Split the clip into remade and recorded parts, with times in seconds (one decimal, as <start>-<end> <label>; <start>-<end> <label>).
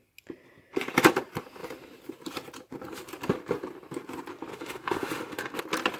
0.0-4.5 recorded; 4.5-5.6 remade; 5.6-6.0 recorded